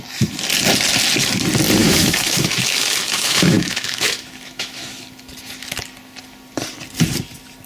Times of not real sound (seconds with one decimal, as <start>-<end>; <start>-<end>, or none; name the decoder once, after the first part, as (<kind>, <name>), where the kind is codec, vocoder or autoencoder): 1.8-4.8 (autoencoder, DAC-VAE)